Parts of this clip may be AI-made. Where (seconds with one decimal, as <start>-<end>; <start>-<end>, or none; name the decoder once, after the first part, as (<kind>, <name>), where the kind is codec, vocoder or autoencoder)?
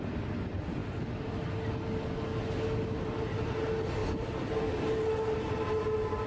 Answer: none